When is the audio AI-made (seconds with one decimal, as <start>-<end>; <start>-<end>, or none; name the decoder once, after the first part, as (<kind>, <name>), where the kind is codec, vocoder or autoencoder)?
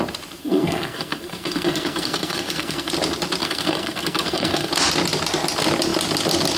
0.4-2.9 (codec, SNAC); 3.4-4.7